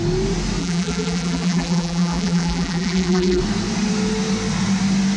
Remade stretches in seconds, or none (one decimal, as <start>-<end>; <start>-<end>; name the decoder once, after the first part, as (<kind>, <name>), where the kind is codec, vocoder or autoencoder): 0.6-3.4 (vocoder, BigVGAN v2)